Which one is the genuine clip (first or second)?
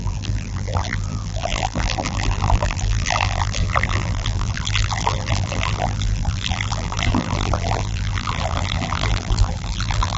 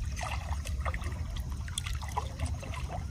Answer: second